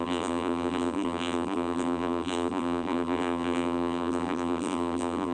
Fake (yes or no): yes